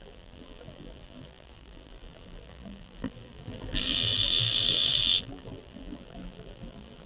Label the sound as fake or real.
fake